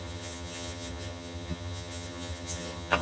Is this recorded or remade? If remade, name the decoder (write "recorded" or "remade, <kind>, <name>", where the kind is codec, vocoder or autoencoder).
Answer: remade, vocoder, HiFi-GAN